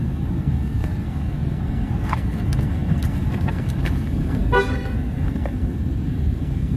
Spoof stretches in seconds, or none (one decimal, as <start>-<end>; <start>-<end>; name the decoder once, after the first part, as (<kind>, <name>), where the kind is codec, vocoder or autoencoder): 0.0-6.8 (codec, SNAC)